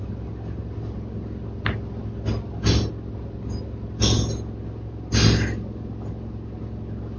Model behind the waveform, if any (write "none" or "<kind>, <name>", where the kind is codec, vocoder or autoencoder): none